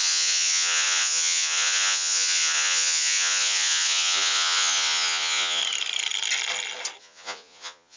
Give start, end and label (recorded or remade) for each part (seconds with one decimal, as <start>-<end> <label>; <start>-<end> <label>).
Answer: 0.0-5.6 remade; 5.6-7.0 recorded; 7.0-8.0 remade